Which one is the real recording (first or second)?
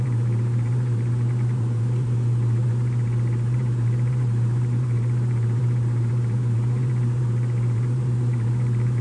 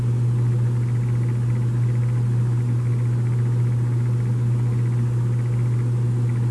second